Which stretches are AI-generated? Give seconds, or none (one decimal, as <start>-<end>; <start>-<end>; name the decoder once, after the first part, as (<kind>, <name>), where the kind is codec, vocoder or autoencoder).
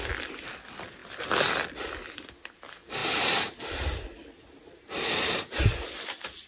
none